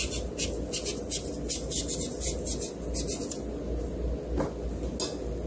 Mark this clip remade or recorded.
recorded